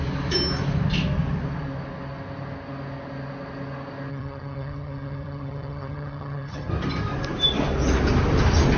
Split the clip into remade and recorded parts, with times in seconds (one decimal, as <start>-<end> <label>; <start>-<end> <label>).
0.0-4.1 recorded; 4.1-6.7 remade; 6.7-8.8 recorded